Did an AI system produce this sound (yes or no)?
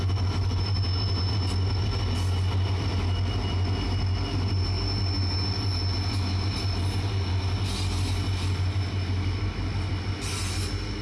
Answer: no